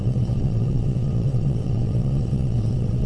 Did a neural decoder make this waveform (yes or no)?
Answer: yes